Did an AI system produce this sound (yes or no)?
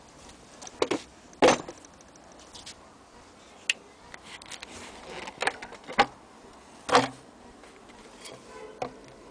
no